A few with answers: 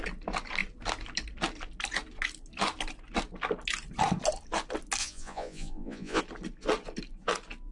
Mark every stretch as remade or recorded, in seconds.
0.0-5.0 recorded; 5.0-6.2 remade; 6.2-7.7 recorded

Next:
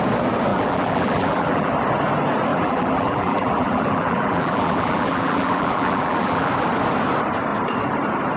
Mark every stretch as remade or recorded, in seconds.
0.0-0.5 recorded; 0.5-1.7 remade; 1.7-2.5 recorded; 2.5-6.5 remade; 6.5-8.4 recorded

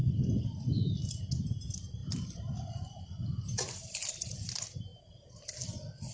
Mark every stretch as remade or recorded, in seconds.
0.0-1.2 remade; 1.2-2.0 recorded; 2.0-3.1 remade; 3.1-6.1 recorded